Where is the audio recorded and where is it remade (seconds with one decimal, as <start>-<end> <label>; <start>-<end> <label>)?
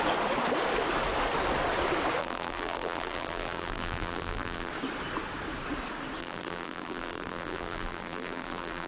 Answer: 0.0-2.2 recorded; 2.2-4.7 remade; 4.7-6.2 recorded; 6.2-8.9 remade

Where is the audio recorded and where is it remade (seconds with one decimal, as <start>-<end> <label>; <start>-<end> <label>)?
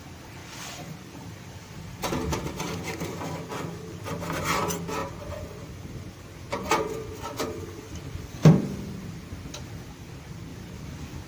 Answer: 0.0-5.0 recorded; 5.0-5.9 remade; 5.9-8.4 recorded; 8.4-8.9 remade; 8.9-10.5 recorded; 10.5-11.3 remade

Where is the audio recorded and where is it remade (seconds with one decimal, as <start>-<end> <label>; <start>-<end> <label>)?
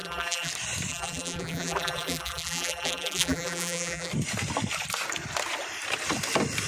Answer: 0.0-0.5 remade; 0.5-0.9 recorded; 0.9-4.1 remade; 4.1-6.7 recorded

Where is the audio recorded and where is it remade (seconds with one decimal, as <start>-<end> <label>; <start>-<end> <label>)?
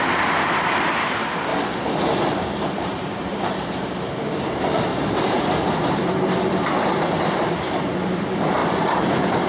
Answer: 0.0-1.5 remade; 1.5-2.0 recorded; 2.0-9.5 remade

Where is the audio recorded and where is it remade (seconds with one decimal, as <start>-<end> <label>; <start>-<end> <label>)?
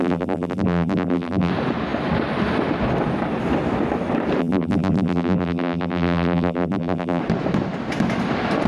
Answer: 0.0-1.5 remade; 1.5-4.4 recorded; 4.4-7.2 remade; 7.2-8.7 recorded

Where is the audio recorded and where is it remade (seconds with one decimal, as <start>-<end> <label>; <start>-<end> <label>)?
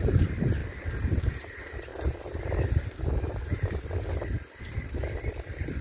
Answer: 0.0-0.6 remade; 0.6-1.2 recorded; 1.2-1.9 remade; 1.9-5.8 recorded